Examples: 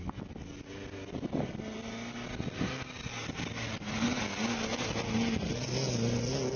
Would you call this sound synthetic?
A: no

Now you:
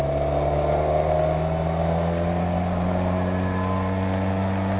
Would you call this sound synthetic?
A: no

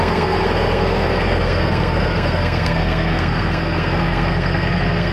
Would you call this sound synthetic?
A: yes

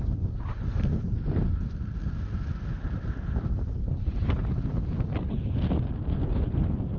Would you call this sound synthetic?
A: no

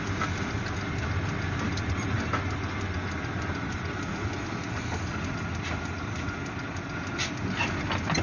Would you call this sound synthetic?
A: no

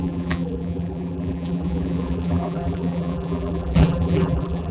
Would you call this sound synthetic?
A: yes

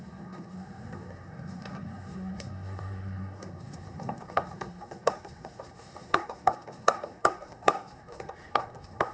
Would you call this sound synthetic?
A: yes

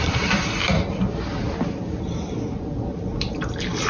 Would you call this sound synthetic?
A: no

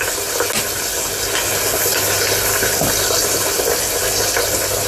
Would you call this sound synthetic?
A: no